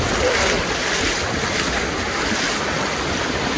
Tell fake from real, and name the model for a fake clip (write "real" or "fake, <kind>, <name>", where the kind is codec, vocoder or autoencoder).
real